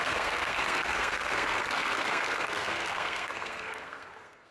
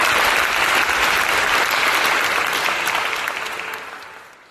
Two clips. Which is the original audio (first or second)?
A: second